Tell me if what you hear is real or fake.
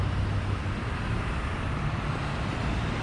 fake